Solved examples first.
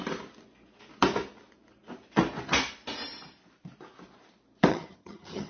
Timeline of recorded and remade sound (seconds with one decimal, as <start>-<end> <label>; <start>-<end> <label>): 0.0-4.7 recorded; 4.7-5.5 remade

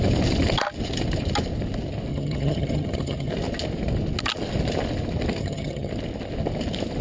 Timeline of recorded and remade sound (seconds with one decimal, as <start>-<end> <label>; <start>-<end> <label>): 0.0-2.1 recorded; 2.1-3.3 remade; 3.3-5.4 recorded; 5.4-5.9 remade; 5.9-7.0 recorded

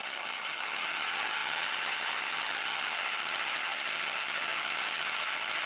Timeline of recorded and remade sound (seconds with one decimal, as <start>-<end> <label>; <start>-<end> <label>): 0.0-5.7 remade